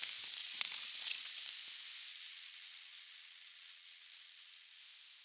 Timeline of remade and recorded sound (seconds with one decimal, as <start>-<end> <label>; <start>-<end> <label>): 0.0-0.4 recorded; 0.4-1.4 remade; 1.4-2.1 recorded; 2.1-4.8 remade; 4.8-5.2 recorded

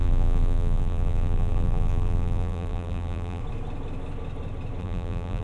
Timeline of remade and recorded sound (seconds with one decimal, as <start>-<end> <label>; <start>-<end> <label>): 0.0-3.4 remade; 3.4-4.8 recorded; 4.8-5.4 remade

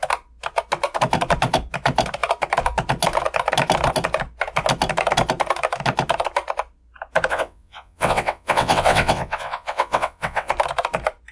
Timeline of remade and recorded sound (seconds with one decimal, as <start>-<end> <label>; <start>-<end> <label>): 0.0-7.3 recorded; 7.3-10.5 remade; 10.5-11.3 recorded